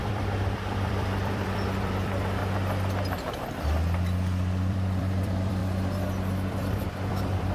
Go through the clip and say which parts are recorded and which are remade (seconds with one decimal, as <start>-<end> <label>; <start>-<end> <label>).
0.0-2.4 remade; 2.4-4.7 recorded; 4.7-5.6 remade; 5.6-6.5 recorded; 6.5-7.5 remade